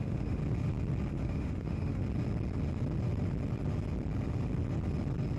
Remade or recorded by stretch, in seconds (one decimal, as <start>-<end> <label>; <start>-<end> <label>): 0.0-0.4 remade; 0.4-1.1 recorded; 1.1-2.0 remade; 2.0-5.4 recorded